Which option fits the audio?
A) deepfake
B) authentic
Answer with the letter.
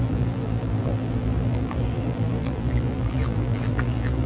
A